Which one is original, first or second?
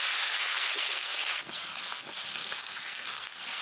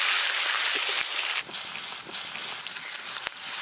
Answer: second